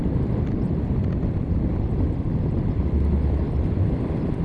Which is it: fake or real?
real